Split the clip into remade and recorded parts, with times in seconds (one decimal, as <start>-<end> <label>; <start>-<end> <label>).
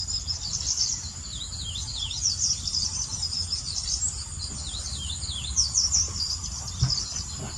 0.0-7.6 recorded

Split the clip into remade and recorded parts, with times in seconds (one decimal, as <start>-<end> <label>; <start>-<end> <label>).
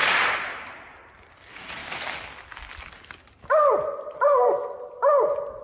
0.0-1.8 remade; 1.8-5.6 recorded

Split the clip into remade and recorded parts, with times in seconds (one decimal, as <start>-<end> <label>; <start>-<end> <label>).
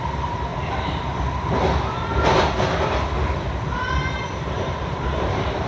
0.0-0.5 remade; 0.5-3.9 recorded; 3.9-5.7 remade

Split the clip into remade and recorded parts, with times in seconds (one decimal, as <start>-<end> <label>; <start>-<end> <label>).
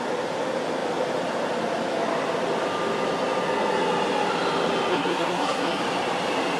0.0-4.9 recorded; 4.9-5.8 remade; 5.8-6.6 recorded